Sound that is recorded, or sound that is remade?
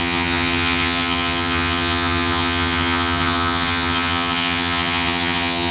remade